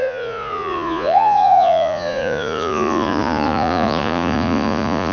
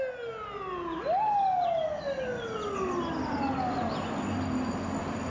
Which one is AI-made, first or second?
first